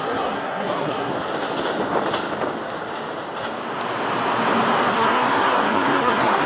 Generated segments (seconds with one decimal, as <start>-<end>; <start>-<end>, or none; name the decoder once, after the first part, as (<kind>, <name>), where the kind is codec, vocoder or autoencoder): 0.0-1.1 (codec, SNAC); 4.9-6.5